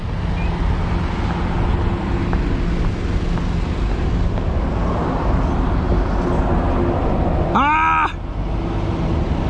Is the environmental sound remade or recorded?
recorded